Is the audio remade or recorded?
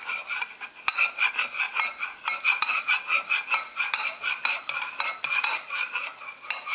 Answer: recorded